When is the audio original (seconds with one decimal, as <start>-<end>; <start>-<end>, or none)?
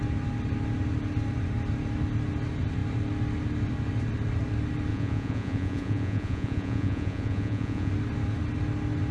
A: 0.0-4.9; 7.9-9.1